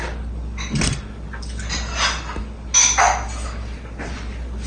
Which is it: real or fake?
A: real